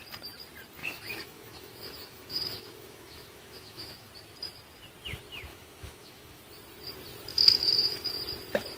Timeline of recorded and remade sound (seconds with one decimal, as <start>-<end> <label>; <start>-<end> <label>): 0.0-0.8 recorded; 0.8-4.1 remade; 4.1-5.5 recorded; 5.5-6.4 remade; 6.4-7.3 recorded; 7.3-8.1 remade; 8.1-8.8 recorded